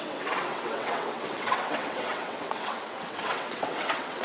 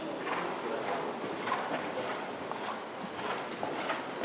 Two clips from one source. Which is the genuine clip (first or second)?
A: second